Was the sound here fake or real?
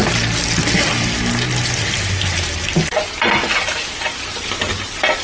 real